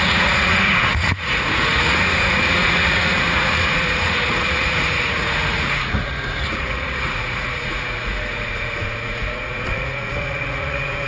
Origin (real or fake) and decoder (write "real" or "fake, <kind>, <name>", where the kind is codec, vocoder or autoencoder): fake, vocoder, Vocos